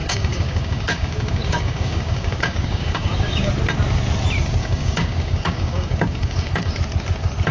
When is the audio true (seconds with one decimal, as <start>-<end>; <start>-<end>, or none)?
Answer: 3.5-4.6; 6.7-7.5